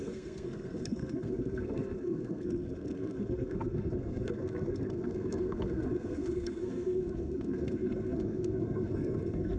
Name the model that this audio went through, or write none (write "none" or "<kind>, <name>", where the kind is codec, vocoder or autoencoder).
codec, SNAC